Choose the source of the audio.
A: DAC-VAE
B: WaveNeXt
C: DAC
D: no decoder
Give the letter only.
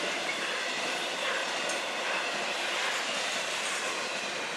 D